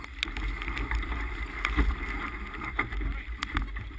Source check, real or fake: real